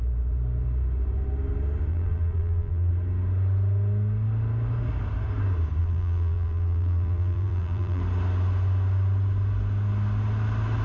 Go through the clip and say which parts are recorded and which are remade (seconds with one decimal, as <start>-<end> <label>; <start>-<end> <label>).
0.0-1.9 recorded; 1.9-2.9 remade; 2.9-5.8 recorded; 5.8-8.0 remade; 8.0-10.8 recorded